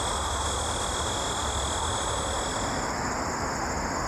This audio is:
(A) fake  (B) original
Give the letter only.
B